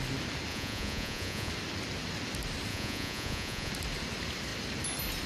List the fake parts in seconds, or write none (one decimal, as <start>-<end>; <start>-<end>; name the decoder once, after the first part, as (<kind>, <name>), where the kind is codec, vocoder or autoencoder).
0.5-1.5 (vocoder, Vocos); 2.7-3.7